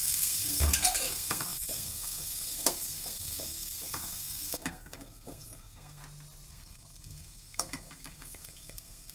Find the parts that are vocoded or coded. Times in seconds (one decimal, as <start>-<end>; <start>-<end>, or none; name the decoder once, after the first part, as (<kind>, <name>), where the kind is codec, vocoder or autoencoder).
0.0-6.0 (codec, SNAC); 6.5-9.1